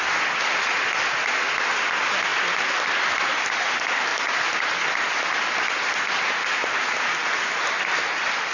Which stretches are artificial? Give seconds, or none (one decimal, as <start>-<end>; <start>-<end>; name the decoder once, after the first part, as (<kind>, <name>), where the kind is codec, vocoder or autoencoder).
none

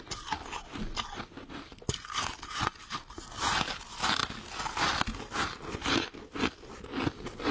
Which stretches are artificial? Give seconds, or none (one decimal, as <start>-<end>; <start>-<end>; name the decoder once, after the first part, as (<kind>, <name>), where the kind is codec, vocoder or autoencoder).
none

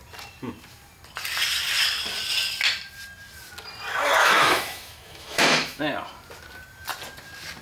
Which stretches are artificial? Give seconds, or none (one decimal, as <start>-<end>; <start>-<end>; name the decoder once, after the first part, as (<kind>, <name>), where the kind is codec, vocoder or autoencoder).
4.2-5.8 (autoencoder, DAC-VAE)

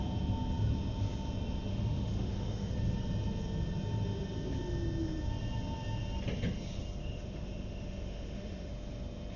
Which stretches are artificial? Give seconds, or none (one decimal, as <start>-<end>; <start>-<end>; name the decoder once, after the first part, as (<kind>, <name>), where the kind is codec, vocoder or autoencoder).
1.7-2.7 (autoencoder, DAC-VAE); 7.0-8.7

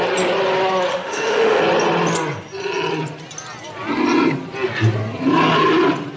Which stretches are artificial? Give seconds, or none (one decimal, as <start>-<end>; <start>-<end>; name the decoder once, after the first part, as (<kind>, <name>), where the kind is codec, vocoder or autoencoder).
0.9-1.6 (autoencoder, DAC-VAE)

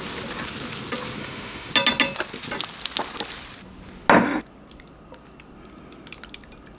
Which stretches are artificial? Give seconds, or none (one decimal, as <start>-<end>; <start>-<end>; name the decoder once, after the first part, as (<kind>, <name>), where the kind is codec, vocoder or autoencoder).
1.2-1.7 (autoencoder, DAC-VAE)